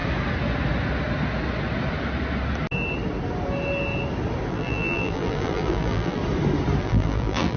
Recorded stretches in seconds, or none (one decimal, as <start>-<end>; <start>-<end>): 0.0-4.5; 6.2-6.8